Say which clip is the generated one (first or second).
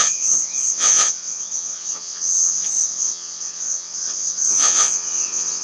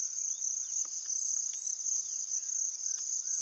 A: first